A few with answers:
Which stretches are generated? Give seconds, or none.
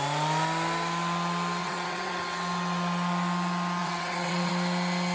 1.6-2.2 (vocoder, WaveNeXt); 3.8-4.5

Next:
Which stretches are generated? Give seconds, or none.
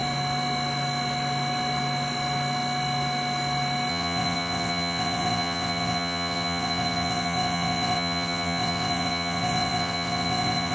3.9-10.7 (vocoder, WaveNeXt)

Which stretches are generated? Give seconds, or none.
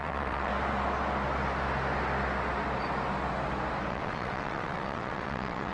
0.0-0.5 (vocoder, WaveNeXt); 3.9-5.7